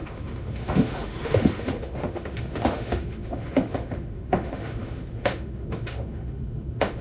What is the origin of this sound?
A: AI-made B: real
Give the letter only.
A